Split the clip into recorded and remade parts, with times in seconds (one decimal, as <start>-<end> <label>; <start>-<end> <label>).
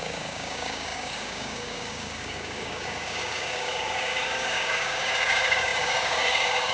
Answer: 0.0-6.7 remade